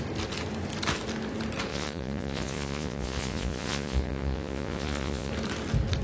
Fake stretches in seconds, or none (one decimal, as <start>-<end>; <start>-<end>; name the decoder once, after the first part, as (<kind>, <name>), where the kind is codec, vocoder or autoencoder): 1.7-5.3 (vocoder, Vocos)